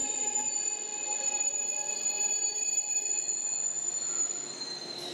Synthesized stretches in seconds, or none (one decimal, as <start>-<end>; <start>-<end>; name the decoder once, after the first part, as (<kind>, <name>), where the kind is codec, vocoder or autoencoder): 0.0-0.5 (vocoder, BigVGAN v2)